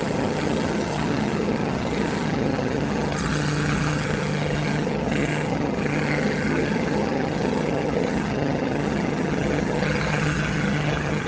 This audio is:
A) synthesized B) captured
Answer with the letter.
A